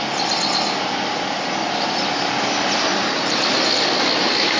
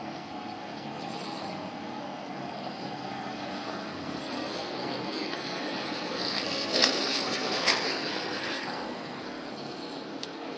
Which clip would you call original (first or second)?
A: first